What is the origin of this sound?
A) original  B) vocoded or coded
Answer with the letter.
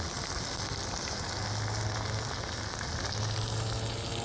A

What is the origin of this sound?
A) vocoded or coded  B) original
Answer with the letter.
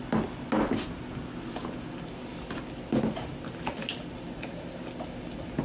B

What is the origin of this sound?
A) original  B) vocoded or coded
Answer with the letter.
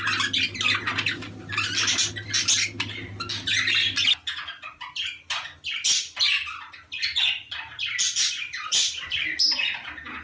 A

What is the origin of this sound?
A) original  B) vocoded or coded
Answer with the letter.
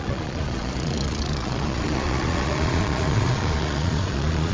B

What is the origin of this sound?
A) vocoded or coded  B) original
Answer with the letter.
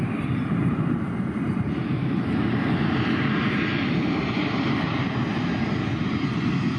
B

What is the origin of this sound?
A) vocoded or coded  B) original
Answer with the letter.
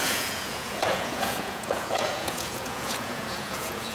A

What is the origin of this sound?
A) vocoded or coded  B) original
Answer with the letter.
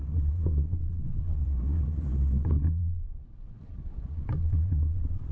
A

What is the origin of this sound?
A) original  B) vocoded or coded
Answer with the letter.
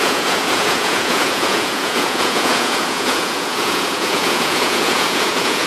B